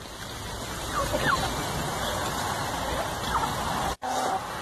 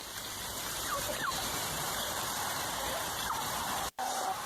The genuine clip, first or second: first